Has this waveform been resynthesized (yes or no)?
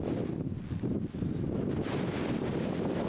no